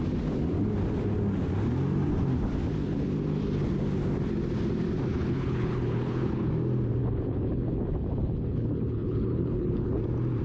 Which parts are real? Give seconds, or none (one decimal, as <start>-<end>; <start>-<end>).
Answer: 0.0-5.1; 6.5-7.0; 10.0-10.4